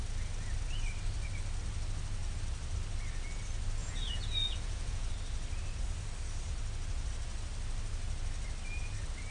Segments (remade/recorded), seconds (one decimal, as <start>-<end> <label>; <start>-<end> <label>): 0.0-3.8 recorded; 3.8-5.1 remade; 5.1-9.3 recorded